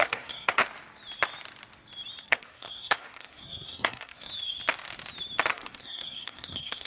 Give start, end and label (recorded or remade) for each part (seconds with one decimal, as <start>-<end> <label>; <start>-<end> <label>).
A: 0.0-0.6 remade; 0.6-2.2 recorded; 2.2-4.3 remade; 4.3-5.5 recorded; 5.5-6.9 remade